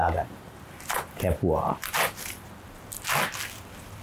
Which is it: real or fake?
real